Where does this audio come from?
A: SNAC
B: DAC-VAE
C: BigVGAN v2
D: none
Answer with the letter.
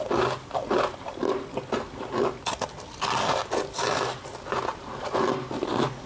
D